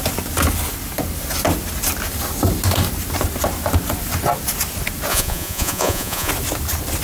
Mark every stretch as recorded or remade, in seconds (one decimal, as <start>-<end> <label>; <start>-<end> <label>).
0.0-5.1 recorded; 5.1-6.3 remade; 6.3-7.0 recorded